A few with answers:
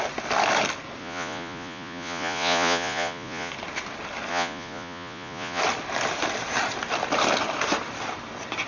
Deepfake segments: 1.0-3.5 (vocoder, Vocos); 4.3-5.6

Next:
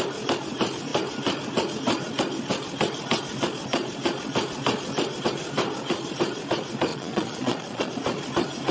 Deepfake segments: 6.9-7.9 (vocoder, Vocos)